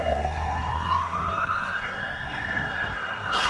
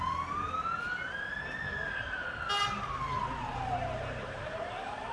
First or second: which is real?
second